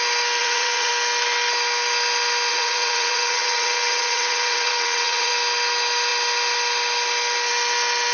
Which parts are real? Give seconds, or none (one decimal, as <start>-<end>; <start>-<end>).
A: 0.0-0.4; 0.9-2.5; 5.3-8.1